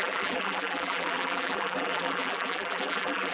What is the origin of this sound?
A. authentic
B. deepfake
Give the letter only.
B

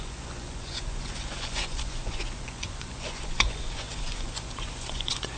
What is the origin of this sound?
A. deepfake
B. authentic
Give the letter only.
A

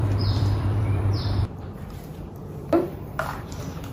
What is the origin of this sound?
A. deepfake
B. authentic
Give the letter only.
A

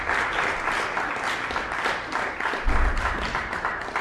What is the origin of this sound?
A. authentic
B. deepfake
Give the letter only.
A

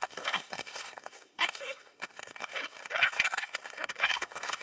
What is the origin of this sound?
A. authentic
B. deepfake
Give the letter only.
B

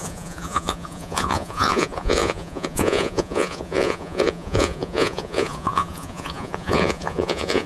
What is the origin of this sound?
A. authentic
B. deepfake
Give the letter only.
B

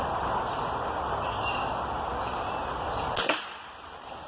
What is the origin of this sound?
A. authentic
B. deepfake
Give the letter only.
A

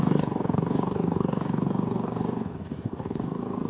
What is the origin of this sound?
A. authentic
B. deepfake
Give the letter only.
B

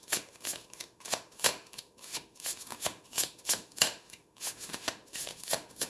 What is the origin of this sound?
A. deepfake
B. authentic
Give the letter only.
A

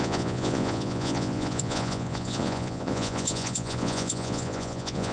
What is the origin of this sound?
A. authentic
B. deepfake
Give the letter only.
B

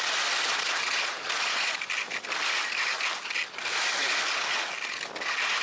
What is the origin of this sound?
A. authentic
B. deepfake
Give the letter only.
A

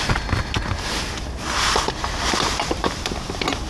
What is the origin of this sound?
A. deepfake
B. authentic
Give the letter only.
B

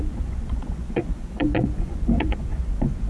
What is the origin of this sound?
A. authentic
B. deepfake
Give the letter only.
B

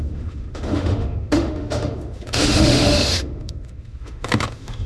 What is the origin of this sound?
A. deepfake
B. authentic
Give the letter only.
A